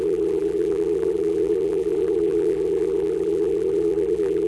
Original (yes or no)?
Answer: no